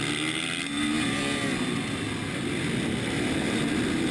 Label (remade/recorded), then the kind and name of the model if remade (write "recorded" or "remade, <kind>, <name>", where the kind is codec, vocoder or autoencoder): recorded